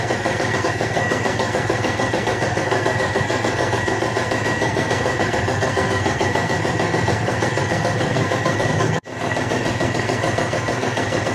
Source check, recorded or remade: remade